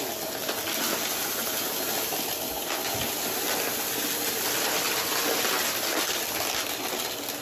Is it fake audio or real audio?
real